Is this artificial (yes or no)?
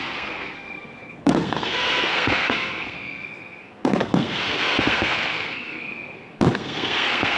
yes